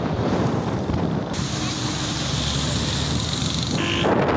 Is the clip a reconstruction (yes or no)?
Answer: no